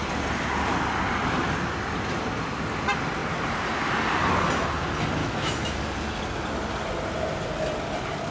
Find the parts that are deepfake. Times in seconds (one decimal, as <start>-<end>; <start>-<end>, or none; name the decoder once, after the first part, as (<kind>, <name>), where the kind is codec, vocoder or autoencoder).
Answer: 5.2-5.8 (autoencoder, DAC-VAE)